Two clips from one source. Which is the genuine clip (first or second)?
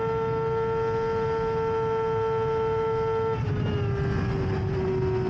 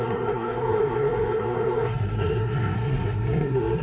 first